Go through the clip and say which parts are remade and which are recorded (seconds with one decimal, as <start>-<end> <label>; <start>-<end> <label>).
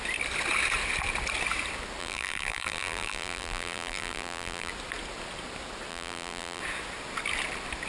0.0-2.0 recorded; 2.0-4.7 remade; 4.7-5.9 recorded; 5.9-6.6 remade; 6.6-7.9 recorded